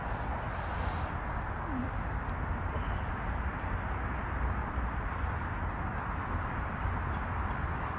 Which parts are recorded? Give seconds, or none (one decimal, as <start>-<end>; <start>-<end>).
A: 0.0-8.0